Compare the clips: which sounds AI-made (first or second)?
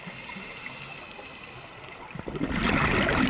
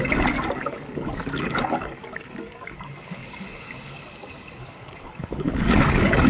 second